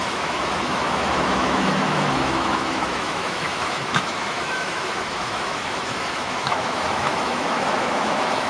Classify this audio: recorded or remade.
remade